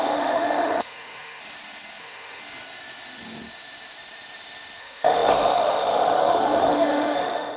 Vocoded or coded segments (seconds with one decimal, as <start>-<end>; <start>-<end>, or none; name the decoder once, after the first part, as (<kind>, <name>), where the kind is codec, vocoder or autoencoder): 0.0-1.4 (autoencoder, DAC-VAE); 2.0-2.4; 4.8-7.6